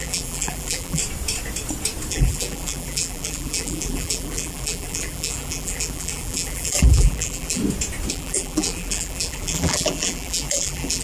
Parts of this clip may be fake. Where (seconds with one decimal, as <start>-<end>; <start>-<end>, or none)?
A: 0.0-1.0; 2.1-7.6; 8.1-11.0